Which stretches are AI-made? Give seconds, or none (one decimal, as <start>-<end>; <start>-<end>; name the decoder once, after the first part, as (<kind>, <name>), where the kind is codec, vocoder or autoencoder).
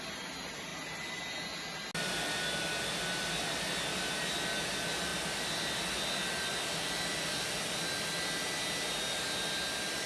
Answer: none